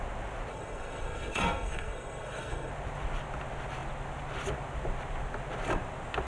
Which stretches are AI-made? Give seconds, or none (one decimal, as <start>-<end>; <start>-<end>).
0.5-2.7